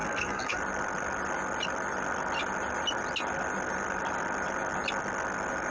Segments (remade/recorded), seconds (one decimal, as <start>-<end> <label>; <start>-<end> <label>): 0.0-0.6 remade; 0.6-5.7 recorded